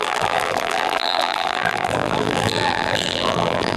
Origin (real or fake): fake